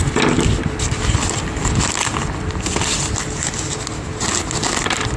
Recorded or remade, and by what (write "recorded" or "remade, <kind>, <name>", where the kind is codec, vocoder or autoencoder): recorded